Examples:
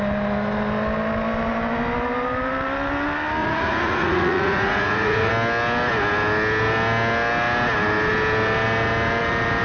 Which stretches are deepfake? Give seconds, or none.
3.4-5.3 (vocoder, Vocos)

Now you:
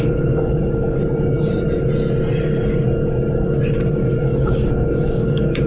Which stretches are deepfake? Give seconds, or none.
0.0-1.0 (codec, DAC); 4.2-5.7

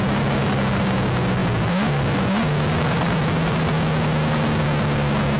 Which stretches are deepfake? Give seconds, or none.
none

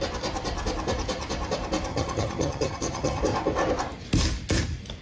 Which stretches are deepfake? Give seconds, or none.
1.9-3.2 (vocoder, HiFi-GAN)